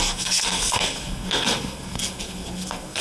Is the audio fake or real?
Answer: fake